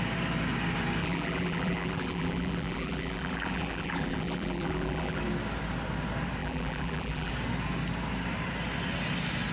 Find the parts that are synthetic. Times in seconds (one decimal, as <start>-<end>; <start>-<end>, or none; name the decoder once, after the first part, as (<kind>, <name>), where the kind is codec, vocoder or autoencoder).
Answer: 1.0-5.2 (vocoder, BigVGAN v2); 6.4-7.3